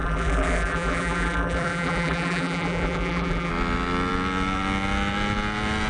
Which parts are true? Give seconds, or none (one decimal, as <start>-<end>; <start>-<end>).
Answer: 3.5-5.9